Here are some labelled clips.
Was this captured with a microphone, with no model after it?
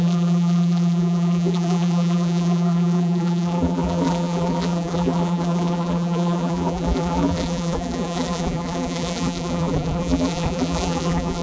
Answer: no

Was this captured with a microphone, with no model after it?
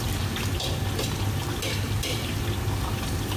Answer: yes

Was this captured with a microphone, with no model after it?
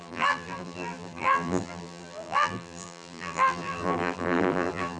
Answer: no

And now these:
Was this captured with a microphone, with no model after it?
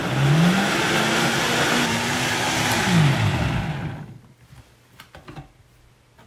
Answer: yes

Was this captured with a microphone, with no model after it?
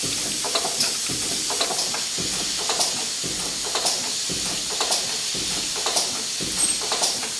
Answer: no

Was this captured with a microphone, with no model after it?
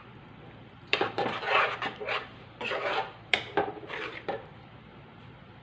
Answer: no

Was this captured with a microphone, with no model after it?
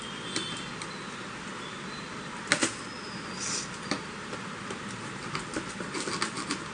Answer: yes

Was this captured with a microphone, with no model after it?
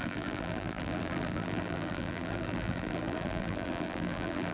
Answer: no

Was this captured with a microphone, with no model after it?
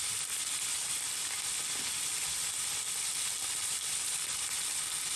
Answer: yes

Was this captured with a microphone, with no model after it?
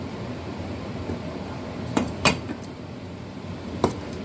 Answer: no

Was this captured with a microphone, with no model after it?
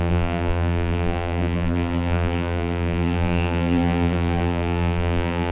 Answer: no